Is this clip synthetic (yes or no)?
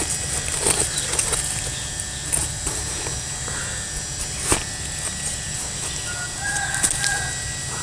no